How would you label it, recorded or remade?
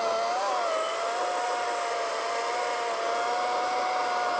recorded